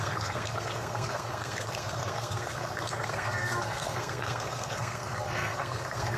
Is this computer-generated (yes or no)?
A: yes